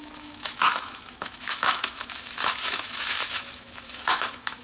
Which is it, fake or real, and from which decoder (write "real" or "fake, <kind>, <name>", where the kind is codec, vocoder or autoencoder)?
fake, autoencoder, DAC-VAE